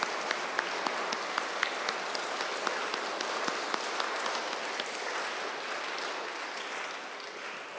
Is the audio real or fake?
real